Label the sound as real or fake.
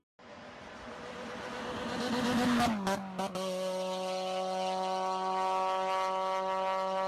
real